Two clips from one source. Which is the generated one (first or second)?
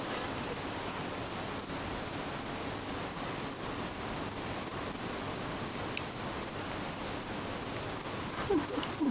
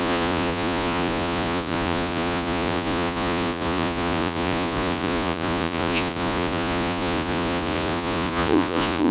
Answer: second